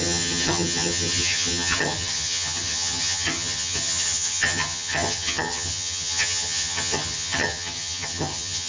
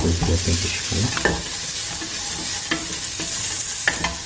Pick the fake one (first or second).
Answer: first